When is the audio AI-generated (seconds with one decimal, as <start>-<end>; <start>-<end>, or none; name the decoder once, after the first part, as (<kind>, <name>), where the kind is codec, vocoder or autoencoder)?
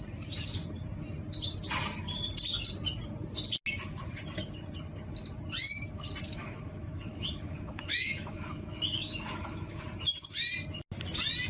6.3-9.8 (autoencoder, DAC-VAE)